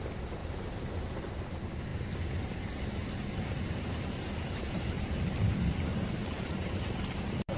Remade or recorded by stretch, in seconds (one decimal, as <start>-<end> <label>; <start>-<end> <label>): 0.0-0.4 recorded; 0.4-1.3 remade; 1.3-3.0 recorded; 3.0-5.3 remade; 5.3-5.9 recorded; 5.9-7.6 remade